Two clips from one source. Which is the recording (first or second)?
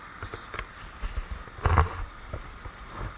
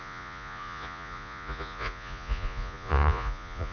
first